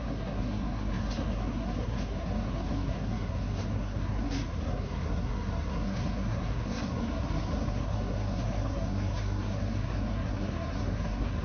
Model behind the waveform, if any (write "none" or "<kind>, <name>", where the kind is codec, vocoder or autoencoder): codec, SNAC